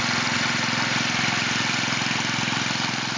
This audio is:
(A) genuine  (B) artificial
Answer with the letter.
A